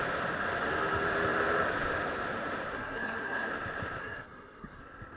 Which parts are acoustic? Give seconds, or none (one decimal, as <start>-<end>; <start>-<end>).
0.0-2.7; 3.5-4.0; 4.8-5.2